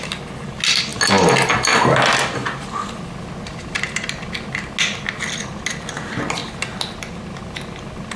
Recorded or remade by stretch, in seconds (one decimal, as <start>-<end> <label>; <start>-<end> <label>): 0.0-8.2 recorded